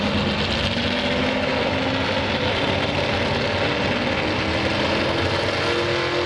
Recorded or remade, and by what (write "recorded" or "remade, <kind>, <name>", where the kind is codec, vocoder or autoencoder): recorded